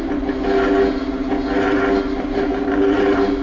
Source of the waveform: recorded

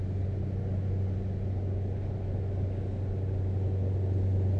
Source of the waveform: recorded